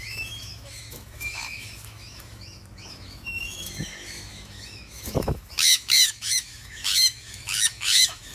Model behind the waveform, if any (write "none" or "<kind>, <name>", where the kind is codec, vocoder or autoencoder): autoencoder, DAC-VAE